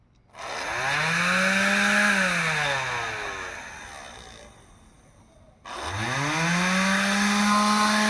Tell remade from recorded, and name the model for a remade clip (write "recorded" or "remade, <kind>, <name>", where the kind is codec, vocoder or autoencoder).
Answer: recorded